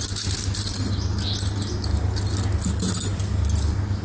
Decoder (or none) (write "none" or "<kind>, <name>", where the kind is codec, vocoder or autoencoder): none